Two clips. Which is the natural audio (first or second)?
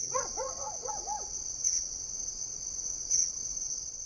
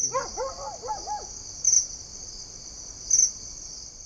second